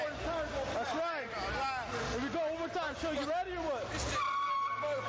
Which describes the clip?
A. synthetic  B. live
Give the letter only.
B